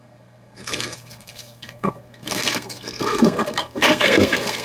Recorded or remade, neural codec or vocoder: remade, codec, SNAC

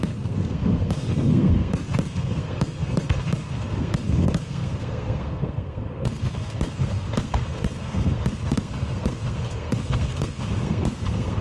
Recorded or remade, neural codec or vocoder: remade, codec, SNAC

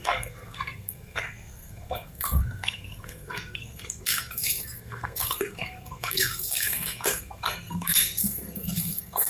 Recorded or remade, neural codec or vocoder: remade, codec, SNAC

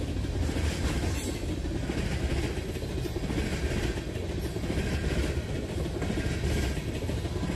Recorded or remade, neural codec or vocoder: recorded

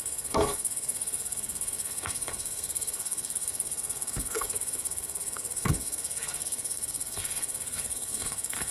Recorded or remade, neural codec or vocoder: remade, codec, SNAC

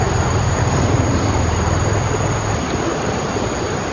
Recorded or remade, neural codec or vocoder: recorded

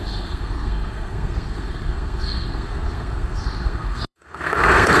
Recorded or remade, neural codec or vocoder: remade, codec, SNAC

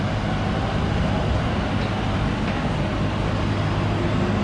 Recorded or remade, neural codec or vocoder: recorded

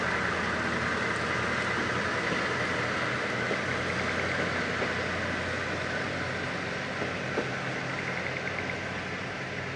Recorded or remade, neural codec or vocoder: recorded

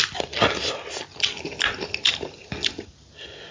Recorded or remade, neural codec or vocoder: recorded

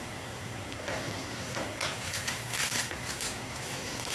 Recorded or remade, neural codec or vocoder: remade, codec, SNAC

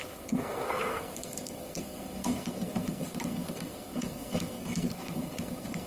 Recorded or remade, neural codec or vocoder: remade, codec, SNAC